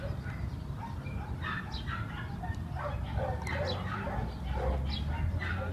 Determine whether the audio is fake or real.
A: real